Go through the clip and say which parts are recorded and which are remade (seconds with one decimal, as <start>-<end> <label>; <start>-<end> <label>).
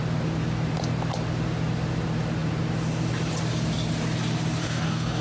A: 0.0-4.6 recorded; 4.6-5.2 remade